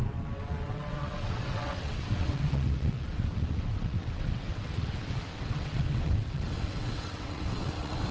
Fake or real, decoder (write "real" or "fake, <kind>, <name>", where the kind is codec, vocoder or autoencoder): fake, vocoder, WaveNeXt